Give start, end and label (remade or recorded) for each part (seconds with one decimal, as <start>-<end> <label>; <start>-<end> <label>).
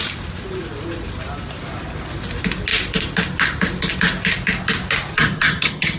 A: 0.0-5.1 recorded; 5.1-6.0 remade